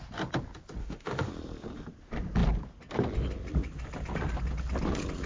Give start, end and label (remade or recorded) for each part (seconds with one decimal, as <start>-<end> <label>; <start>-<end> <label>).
0.0-0.8 recorded; 0.8-1.3 remade; 1.3-5.3 recorded